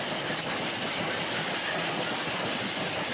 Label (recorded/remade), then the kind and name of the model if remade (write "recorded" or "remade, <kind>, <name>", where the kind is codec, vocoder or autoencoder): recorded